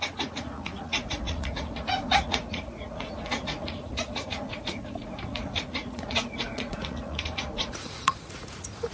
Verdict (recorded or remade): remade